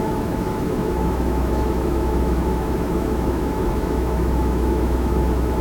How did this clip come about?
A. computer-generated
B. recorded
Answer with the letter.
A